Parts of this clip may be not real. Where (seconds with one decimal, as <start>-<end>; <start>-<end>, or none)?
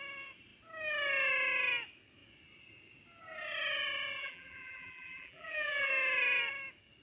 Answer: 4.2-5.9